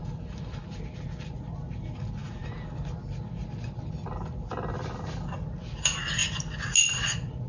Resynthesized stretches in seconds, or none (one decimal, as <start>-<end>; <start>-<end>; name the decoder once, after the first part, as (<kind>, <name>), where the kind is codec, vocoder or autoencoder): none